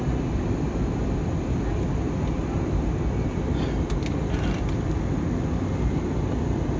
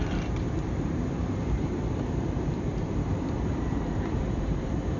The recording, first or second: first